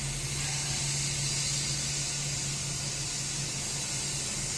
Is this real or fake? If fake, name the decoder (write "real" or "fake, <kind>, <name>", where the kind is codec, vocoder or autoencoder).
real